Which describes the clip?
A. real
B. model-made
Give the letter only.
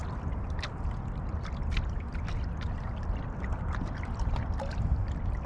A